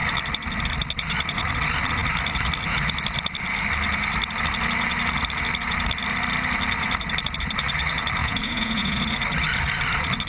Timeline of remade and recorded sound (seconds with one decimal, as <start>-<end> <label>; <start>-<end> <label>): 0.0-8.2 recorded; 8.2-9.0 remade; 9.0-10.3 recorded